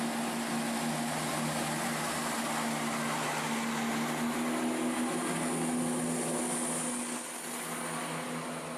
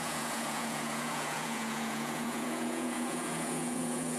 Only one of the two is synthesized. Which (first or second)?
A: second